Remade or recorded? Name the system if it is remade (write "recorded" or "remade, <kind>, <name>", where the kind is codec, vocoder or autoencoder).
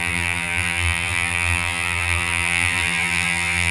remade, vocoder, BigVGAN v2